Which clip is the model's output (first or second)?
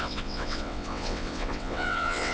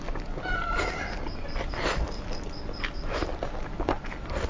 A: first